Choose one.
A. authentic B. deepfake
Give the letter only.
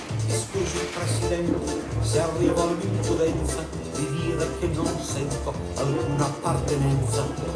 A